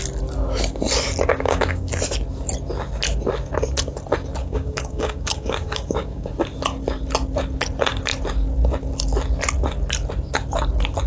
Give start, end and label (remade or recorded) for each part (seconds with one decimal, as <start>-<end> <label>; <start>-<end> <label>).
0.0-1.3 recorded; 1.3-1.9 remade; 1.9-4.4 recorded; 4.4-6.3 remade; 6.3-11.1 recorded